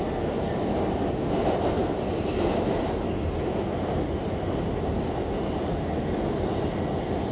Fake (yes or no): no